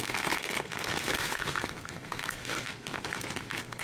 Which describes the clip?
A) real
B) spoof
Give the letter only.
B